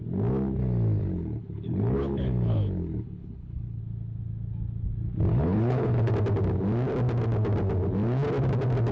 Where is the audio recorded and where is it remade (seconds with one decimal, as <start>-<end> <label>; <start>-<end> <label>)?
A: 0.0-1.0 recorded; 1.0-3.8 remade; 3.8-5.3 recorded; 5.3-6.1 remade; 6.1-8.9 recorded